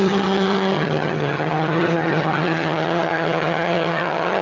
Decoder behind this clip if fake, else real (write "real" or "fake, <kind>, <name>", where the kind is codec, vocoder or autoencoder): fake, vocoder, HiFi-GAN